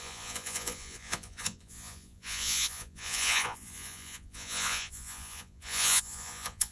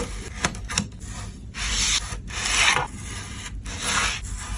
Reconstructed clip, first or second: first